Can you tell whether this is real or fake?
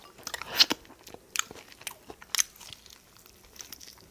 real